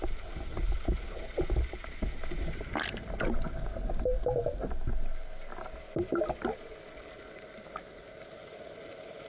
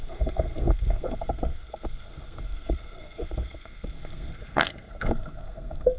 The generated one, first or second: second